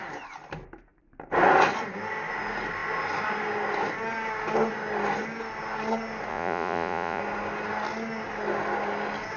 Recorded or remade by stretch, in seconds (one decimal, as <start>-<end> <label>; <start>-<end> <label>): 0.0-6.3 recorded; 6.3-7.2 remade; 7.2-9.4 recorded